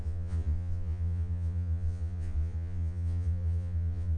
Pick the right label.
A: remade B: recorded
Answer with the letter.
A